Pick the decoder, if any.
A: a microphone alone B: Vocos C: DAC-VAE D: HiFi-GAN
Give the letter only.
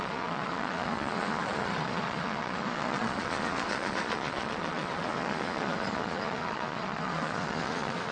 B